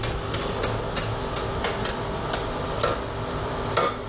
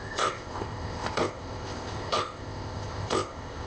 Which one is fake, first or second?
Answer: second